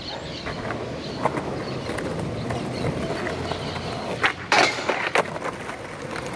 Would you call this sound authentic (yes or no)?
yes